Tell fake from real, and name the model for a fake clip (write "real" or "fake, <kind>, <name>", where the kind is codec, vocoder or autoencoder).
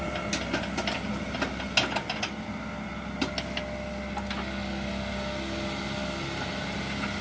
real